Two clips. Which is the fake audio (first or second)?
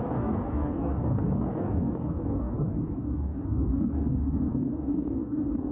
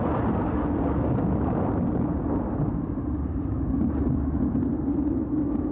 first